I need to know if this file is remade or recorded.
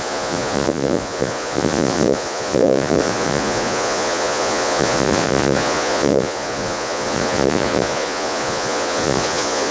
remade